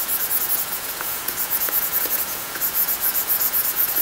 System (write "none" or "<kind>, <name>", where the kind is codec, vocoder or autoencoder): vocoder, Vocos